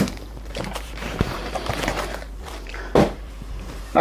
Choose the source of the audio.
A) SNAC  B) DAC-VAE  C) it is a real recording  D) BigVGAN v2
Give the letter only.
D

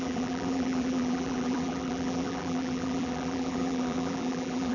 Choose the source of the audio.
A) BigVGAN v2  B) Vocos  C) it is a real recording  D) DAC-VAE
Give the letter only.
A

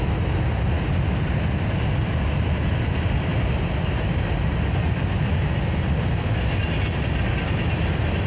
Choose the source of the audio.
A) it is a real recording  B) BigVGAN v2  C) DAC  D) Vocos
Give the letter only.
A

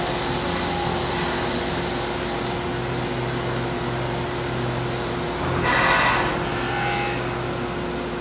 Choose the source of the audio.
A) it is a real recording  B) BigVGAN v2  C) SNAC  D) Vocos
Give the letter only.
A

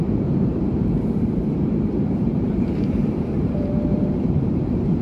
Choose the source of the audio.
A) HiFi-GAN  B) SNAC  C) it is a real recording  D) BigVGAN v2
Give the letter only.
D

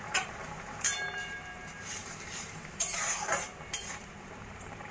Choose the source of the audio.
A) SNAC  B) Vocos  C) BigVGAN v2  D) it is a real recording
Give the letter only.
C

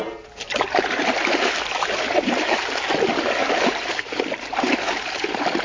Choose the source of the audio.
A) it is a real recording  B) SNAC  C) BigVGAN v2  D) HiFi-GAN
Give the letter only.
C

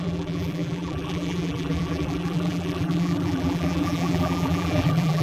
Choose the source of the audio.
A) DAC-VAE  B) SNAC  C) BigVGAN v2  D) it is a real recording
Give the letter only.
C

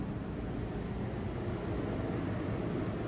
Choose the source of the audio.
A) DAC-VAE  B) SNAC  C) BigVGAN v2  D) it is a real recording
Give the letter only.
D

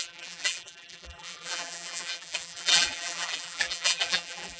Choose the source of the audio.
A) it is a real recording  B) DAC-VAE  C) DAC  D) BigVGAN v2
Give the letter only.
D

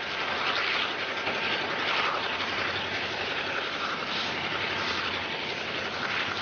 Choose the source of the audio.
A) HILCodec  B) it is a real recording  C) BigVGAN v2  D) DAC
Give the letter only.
C